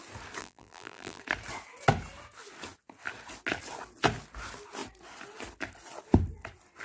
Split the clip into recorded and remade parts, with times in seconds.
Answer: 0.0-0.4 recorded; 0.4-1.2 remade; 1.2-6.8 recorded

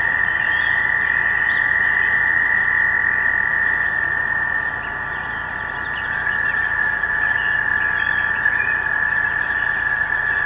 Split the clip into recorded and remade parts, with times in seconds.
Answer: 0.0-2.6 remade; 2.6-3.5 recorded; 3.5-7.7 remade; 7.7-8.3 recorded; 8.3-10.5 remade

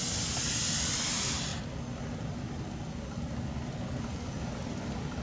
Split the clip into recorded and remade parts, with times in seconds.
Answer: 0.0-1.5 remade; 1.5-4.0 recorded; 4.0-5.2 remade

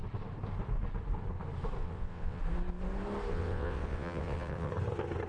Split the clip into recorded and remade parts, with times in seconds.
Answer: 0.0-1.8 recorded; 1.8-2.4 remade; 2.4-3.3 recorded; 3.3-4.7 remade; 4.7-5.3 recorded

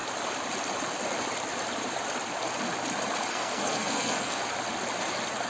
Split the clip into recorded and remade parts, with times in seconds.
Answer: 0.0-3.3 recorded; 3.3-4.4 remade; 4.4-5.5 recorded

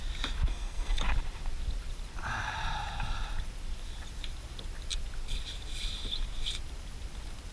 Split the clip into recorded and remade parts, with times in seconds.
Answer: 0.0-0.5 recorded; 0.5-1.0 remade; 1.0-7.5 recorded

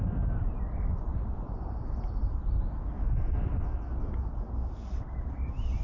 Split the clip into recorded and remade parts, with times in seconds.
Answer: 0.0-5.8 recorded